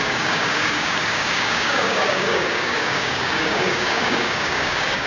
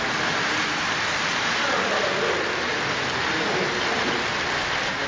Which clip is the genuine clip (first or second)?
second